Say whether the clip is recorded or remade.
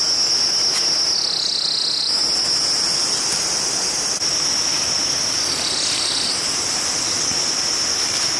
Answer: recorded